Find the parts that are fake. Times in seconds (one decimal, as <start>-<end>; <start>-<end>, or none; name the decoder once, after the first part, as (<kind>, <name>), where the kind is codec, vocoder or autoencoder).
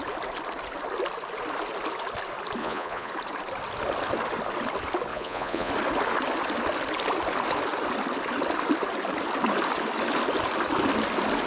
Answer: 2.6-3.1 (vocoder, Vocos); 5.1-5.7